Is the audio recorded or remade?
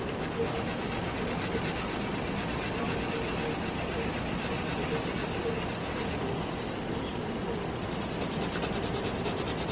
recorded